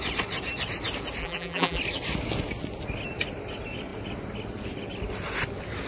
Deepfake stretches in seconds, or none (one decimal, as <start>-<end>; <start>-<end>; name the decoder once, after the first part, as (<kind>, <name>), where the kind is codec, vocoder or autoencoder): 1.2-1.8 (vocoder, BigVGAN v2)